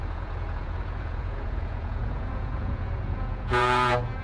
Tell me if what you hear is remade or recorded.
remade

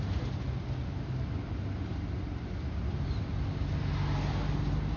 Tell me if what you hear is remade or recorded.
recorded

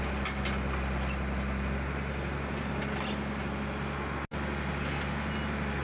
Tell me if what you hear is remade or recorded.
recorded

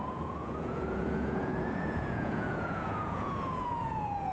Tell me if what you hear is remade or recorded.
remade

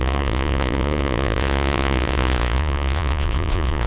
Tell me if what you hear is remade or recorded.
remade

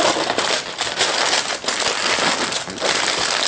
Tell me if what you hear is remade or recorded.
recorded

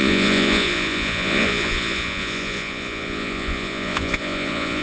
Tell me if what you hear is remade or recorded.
remade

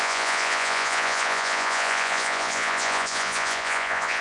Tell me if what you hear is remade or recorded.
remade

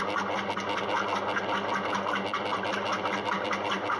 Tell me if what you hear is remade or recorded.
recorded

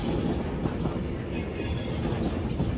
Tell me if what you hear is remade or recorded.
recorded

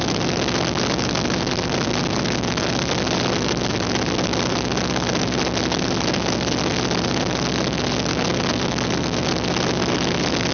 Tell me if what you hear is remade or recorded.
recorded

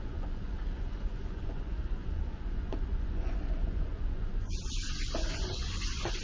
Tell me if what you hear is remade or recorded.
remade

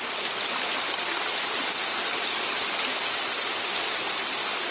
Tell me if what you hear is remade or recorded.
recorded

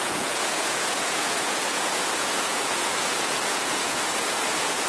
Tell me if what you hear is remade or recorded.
remade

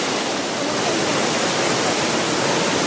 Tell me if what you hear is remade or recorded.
recorded